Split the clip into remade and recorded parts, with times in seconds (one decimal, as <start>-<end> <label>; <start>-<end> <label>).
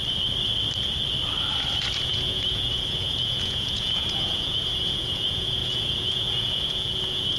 0.0-2.0 recorded; 2.0-7.4 remade